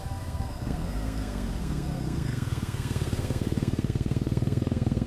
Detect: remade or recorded remade